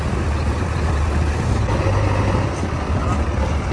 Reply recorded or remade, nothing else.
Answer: recorded